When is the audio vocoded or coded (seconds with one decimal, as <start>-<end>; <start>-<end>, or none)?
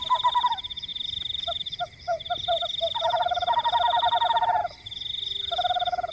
none